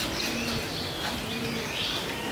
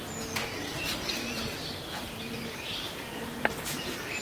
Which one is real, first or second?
first